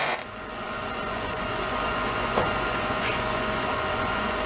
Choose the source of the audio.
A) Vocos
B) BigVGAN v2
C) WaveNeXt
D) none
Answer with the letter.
A